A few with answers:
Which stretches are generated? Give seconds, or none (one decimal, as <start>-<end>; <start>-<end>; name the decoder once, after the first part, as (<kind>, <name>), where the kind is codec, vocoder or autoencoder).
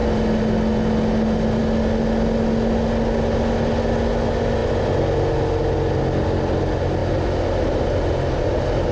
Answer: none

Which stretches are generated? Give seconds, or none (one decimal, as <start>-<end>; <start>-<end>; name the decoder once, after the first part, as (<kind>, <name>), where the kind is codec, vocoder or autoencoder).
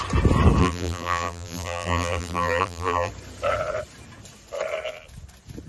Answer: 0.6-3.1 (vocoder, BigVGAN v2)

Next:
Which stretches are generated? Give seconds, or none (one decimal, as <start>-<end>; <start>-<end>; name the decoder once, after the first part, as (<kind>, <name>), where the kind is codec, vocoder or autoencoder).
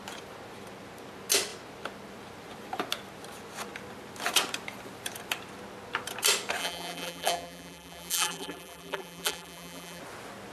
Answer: 6.6-10.0 (vocoder, BigVGAN v2)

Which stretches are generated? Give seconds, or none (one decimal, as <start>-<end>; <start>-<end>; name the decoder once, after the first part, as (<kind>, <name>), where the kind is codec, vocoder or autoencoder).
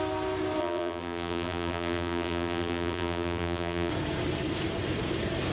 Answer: 0.6-3.9 (vocoder, BigVGAN v2)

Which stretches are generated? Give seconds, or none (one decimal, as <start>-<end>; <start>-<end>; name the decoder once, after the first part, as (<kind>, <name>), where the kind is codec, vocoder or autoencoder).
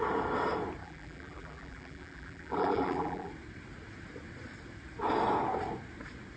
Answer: 0.8-3.3 (vocoder, BigVGAN v2)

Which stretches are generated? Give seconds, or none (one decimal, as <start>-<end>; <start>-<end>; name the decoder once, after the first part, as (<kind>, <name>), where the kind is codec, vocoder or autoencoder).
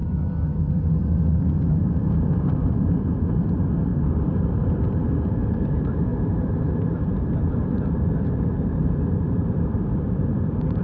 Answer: 1.7-10.8 (vocoder, BigVGAN v2)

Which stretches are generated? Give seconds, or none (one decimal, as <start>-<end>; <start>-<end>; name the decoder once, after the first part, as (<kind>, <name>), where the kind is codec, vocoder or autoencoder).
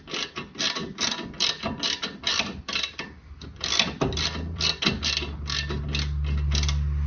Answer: 0.8-4.8 (vocoder, BigVGAN v2)